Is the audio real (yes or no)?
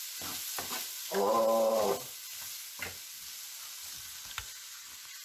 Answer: yes